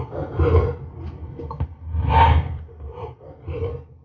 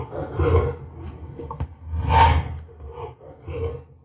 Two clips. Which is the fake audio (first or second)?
first